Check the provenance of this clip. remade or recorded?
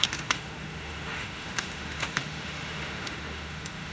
remade